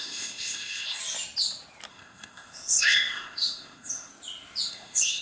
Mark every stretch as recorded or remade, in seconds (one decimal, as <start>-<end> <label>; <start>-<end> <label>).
0.0-1.0 remade; 1.0-1.9 recorded; 1.9-4.1 remade; 4.1-4.7 recorded; 4.7-5.2 remade